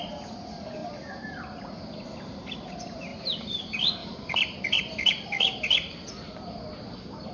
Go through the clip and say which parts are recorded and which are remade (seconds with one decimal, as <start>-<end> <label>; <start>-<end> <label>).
0.0-0.8 recorded; 0.8-1.8 remade; 1.8-4.0 recorded; 4.0-5.1 remade; 5.1-7.3 recorded